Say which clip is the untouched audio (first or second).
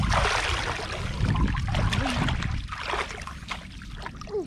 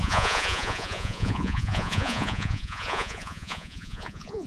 first